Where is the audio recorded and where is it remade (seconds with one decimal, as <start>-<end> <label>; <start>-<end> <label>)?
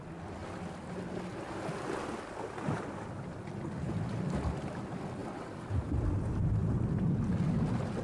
0.0-8.0 recorded